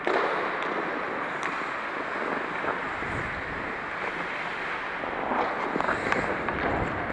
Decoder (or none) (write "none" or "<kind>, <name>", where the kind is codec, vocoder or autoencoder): none